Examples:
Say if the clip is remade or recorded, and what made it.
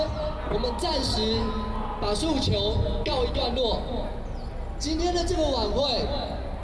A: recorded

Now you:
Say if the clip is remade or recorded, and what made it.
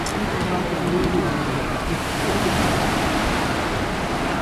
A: recorded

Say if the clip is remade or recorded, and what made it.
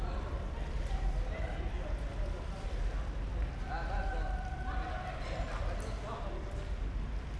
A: recorded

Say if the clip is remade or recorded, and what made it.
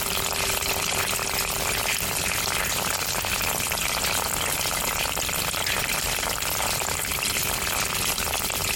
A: recorded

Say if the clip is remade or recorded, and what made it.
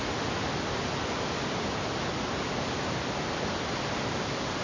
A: recorded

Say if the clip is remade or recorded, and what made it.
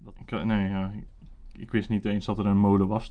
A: recorded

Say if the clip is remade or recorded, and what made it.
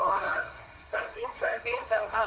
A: remade, codec, SNAC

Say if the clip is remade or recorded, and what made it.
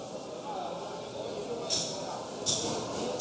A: recorded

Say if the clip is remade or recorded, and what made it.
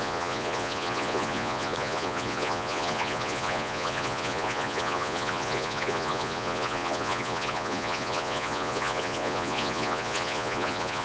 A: remade, vocoder, Vocos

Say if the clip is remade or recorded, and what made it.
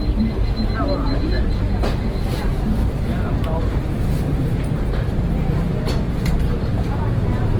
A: remade, vocoder, BigVGAN v2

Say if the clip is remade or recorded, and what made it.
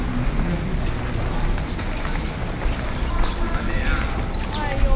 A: recorded